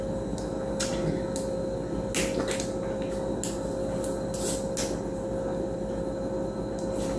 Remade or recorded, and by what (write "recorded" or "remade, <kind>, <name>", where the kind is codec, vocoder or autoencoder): recorded